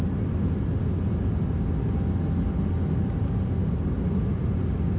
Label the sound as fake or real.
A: real